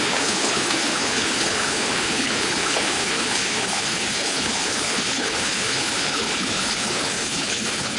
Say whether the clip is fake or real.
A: fake